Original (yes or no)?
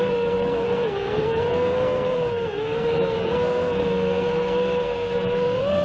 no